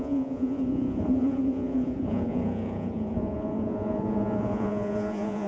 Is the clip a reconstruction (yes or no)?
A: yes